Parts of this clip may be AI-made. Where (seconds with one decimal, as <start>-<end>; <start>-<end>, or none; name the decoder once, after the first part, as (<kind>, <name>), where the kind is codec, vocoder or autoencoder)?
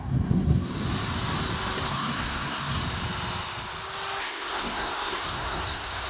0.0-0.7 (codec, SNAC); 1.9-2.8; 4.2-6.1